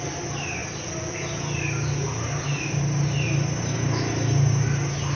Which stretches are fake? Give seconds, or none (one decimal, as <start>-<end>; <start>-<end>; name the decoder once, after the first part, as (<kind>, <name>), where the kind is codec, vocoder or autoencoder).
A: none